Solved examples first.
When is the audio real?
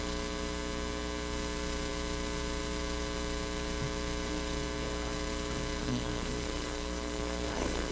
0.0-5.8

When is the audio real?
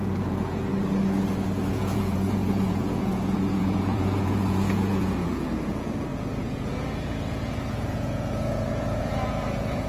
0.7-1.7